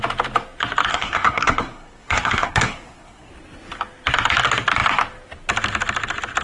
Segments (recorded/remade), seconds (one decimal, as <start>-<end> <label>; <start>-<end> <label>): 0.0-0.9 recorded; 0.9-3.3 remade; 3.3-6.4 recorded